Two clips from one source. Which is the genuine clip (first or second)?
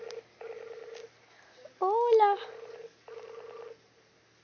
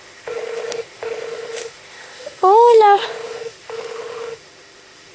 first